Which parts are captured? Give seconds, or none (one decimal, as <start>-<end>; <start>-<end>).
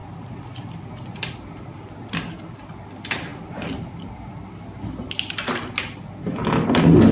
0.0-7.1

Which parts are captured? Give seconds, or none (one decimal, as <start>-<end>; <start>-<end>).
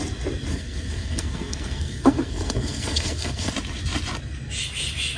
0.0-0.5; 3.5-5.2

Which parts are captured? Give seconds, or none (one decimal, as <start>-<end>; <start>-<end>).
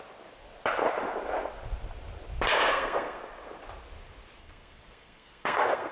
0.0-2.5; 3.2-4.4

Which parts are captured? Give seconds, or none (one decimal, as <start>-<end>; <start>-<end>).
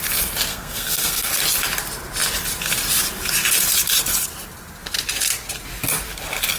0.0-0.5; 1.3-6.6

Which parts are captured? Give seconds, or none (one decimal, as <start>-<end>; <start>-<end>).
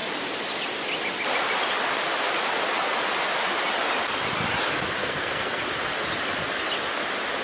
0.0-5.0; 5.6-7.4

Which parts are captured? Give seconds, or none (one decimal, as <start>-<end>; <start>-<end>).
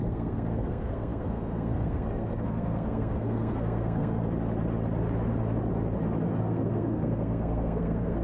4.2-6.4